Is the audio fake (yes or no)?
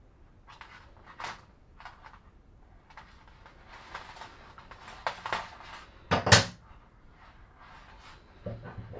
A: no